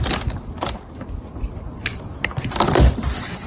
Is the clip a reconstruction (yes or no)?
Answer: no